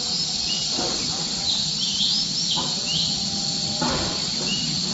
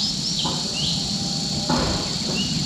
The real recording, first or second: first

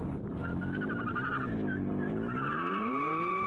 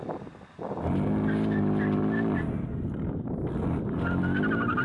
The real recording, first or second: second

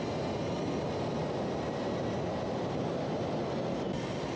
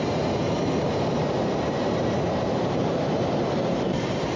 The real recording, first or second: first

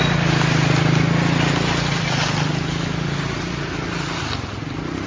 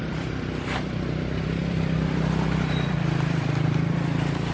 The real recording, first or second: first